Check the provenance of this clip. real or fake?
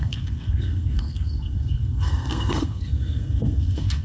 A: fake